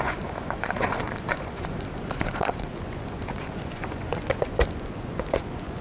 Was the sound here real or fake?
fake